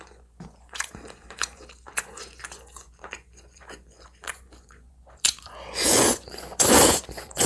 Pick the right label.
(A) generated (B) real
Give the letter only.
A